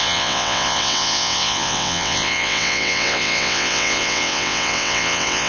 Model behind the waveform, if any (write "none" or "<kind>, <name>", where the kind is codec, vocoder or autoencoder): vocoder, WaveNeXt